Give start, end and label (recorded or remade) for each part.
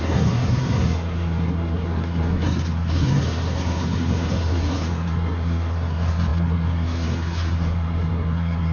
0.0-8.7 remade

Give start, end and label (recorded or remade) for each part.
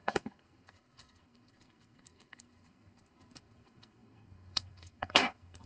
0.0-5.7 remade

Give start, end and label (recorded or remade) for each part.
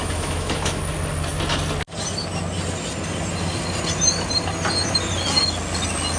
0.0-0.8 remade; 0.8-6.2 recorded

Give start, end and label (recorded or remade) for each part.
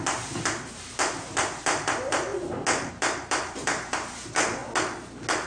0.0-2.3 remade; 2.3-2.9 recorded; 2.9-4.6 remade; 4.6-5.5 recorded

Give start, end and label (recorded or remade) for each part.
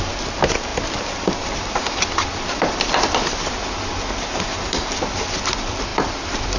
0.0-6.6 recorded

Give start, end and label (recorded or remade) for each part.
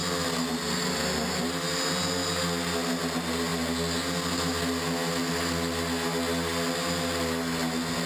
0.0-8.1 recorded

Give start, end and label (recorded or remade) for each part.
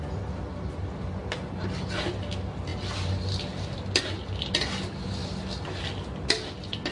0.0-6.9 recorded